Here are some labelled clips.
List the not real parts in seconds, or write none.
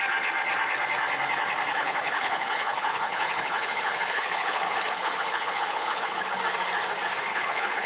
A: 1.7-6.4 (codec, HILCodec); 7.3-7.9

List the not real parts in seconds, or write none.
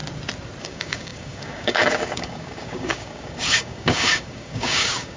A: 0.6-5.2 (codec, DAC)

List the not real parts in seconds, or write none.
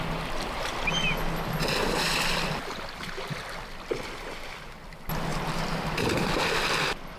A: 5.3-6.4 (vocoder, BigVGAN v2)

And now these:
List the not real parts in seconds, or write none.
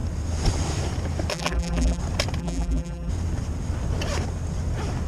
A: 1.3-2.0 (vocoder, BigVGAN v2); 2.4-3.1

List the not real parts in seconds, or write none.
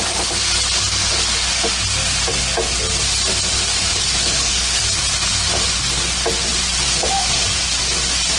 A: 3.9-4.8 (codec, HILCodec)